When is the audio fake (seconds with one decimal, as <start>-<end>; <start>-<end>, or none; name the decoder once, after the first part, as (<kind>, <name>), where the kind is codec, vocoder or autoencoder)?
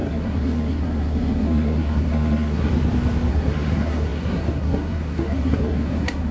0.0-2.7 (codec, SNAC); 3.3-6.3